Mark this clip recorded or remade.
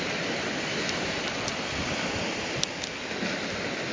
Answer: recorded